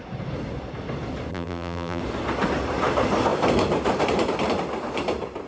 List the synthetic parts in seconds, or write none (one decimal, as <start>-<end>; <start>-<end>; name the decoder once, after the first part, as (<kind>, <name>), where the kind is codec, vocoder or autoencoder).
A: 1.3-2.0 (vocoder, BigVGAN v2)